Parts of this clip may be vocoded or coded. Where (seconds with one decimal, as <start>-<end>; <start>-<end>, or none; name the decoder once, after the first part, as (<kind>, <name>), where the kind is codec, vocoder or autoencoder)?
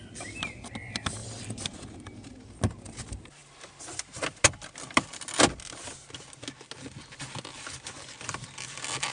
none